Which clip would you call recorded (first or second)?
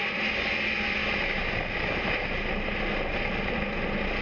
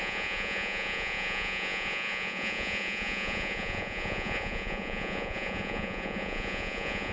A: first